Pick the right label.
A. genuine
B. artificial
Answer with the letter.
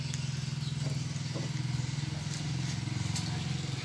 A